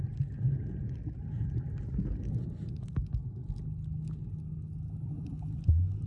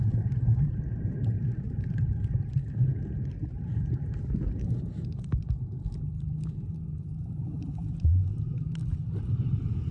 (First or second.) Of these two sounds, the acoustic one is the first